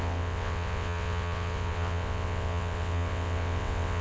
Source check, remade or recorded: remade